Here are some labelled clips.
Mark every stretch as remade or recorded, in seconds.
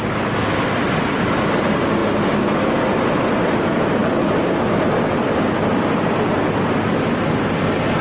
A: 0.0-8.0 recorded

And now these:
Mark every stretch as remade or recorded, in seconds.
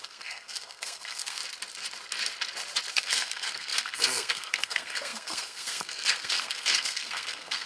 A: 0.0-1.4 remade; 1.4-2.9 recorded; 2.9-7.7 remade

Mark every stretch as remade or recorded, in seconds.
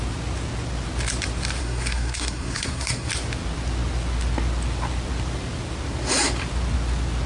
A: 0.0-1.6 recorded; 1.6-3.1 remade; 3.1-7.3 recorded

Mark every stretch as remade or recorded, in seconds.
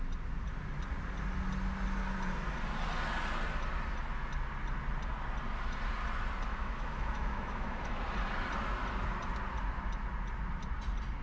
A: 0.0-6.5 recorded; 6.5-8.0 remade; 8.0-11.2 recorded